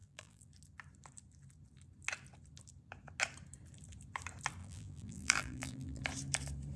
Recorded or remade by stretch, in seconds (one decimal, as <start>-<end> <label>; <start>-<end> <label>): 0.0-0.5 remade; 0.5-4.6 recorded; 4.6-6.0 remade; 6.0-6.8 recorded